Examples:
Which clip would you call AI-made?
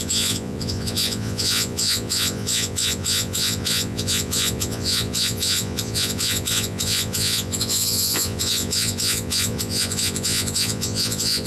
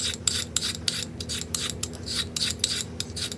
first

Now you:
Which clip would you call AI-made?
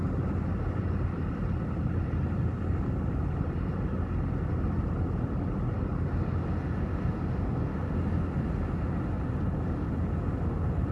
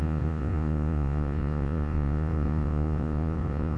second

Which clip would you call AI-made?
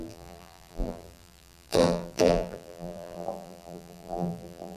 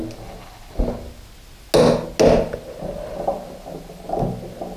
first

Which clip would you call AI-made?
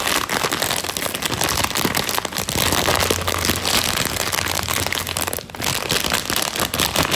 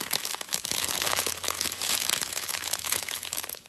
second